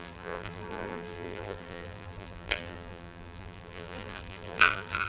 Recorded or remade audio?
remade